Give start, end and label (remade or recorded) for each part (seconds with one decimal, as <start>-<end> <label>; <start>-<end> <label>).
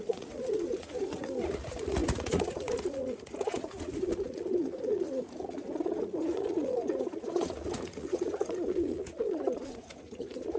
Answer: 0.0-10.6 remade